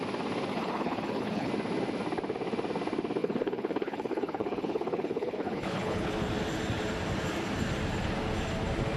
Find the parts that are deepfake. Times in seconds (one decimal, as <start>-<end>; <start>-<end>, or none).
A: 0.5-1.5; 3.2-6.1